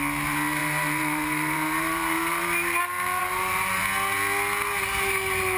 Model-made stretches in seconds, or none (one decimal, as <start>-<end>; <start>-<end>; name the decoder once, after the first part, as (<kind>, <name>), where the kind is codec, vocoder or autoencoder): 0.6-2.8 (vocoder, BigVGAN v2); 3.2-3.8